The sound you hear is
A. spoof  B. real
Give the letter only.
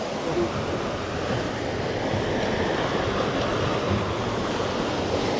B